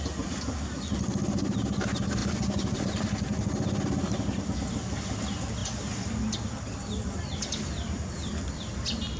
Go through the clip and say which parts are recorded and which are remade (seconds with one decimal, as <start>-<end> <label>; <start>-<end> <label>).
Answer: 0.0-9.2 recorded